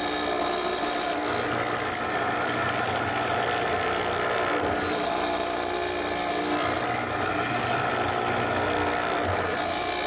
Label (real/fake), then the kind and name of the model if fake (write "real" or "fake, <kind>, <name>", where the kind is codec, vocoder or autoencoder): real